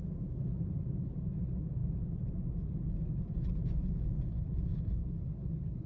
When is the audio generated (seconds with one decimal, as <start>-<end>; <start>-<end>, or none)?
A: 5.0-5.9